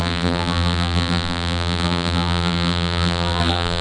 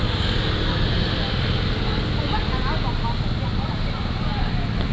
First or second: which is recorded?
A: second